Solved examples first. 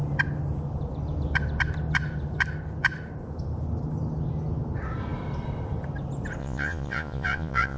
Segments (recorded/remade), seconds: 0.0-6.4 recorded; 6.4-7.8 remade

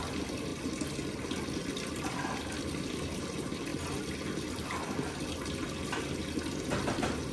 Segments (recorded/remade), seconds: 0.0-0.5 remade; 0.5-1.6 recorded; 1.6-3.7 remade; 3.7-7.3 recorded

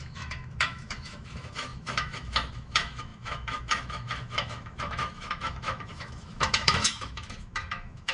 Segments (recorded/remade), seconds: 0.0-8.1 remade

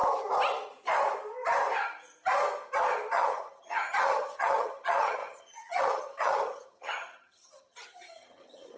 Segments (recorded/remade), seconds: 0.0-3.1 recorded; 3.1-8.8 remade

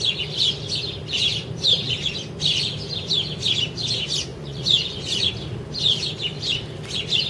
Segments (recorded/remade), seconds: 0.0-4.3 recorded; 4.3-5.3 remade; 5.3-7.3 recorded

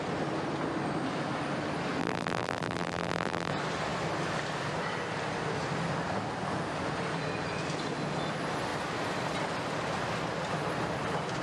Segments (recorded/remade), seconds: 0.0-2.0 recorded; 2.0-3.5 remade; 3.5-11.4 recorded

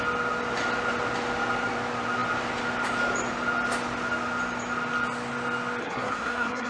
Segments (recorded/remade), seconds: 0.0-5.8 recorded; 5.8-6.7 remade

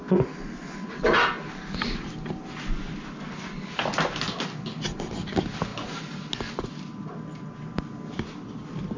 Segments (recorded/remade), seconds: 0.0-9.0 recorded